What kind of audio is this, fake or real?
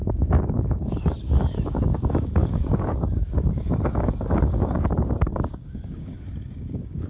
fake